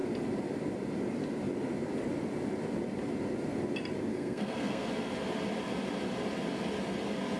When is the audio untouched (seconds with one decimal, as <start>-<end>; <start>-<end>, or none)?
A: 0.0-4.1; 4.9-7.4